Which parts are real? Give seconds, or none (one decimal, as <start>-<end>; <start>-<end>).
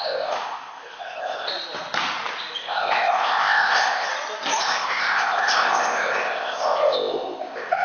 1.5-2.6; 4.1-4.6